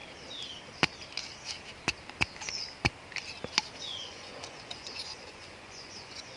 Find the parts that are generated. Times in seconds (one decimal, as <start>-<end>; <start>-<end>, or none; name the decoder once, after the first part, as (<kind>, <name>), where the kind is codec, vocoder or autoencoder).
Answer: 3.8-6.4 (vocoder, Vocos)